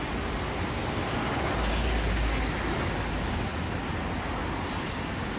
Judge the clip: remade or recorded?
recorded